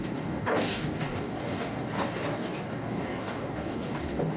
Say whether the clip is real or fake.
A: fake